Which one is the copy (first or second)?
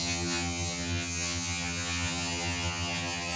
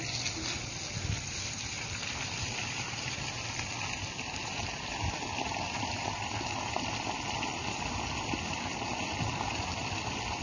first